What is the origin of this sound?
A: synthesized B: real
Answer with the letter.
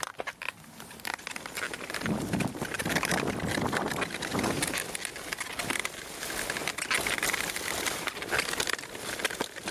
B